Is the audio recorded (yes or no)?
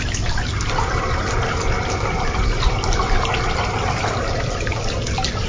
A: yes